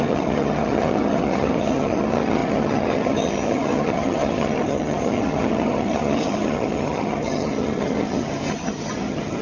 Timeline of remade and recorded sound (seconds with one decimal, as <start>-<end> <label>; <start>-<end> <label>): 0.0-9.4 remade